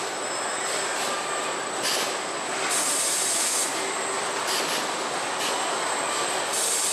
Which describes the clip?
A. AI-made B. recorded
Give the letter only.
B